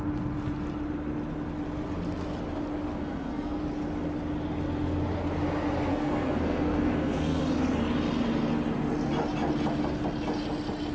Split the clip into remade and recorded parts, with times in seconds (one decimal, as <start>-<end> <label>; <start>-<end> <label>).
0.0-3.0 recorded; 3.0-3.6 remade; 3.6-5.9 recorded; 5.9-7.4 remade; 7.4-10.9 recorded